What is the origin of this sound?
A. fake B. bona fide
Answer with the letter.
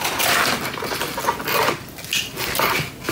B